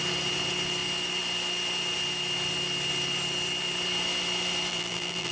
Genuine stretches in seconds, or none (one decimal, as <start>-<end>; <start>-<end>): 0.0-4.7